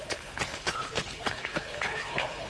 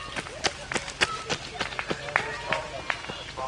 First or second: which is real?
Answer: second